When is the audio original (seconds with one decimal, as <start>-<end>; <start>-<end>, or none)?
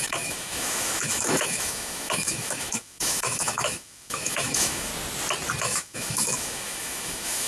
4.9-5.6